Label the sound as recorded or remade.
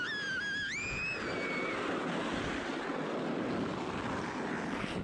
recorded